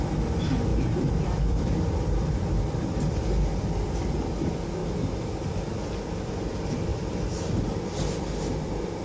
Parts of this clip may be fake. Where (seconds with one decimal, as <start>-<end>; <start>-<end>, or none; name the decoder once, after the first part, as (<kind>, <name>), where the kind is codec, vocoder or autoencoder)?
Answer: 0.7-3.2 (vocoder, BigVGAN v2); 4.8-5.5; 6.9-7.7